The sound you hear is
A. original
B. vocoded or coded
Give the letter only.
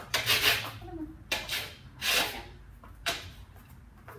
A